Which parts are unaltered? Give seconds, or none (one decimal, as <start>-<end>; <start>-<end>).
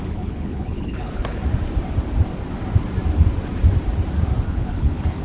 1.4-4.5